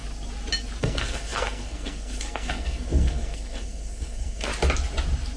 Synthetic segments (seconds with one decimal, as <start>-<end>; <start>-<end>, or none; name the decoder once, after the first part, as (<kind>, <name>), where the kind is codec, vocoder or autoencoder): 0.8-4.5 (codec, SNAC)